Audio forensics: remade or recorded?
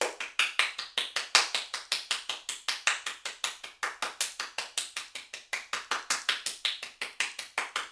recorded